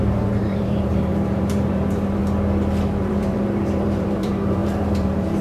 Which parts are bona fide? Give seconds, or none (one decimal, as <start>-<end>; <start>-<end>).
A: 2.2-3.0